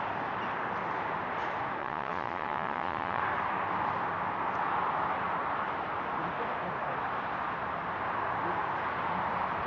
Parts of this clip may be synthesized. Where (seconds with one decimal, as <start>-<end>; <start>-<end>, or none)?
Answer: 1.8-3.2